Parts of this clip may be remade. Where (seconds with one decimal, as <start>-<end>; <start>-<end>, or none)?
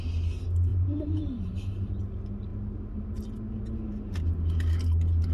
0.7-1.9